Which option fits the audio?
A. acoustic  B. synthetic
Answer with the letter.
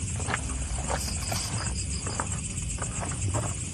A